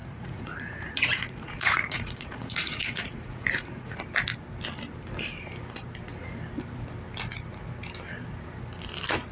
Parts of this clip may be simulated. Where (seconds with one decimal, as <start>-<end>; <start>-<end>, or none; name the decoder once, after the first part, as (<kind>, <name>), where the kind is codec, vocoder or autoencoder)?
0.0-4.0 (vocoder, Vocos)